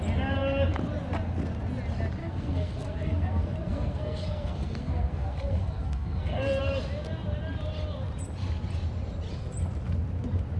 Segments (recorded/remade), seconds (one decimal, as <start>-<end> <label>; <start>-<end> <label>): 0.0-2.2 recorded; 2.2-6.6 remade; 6.6-10.6 recorded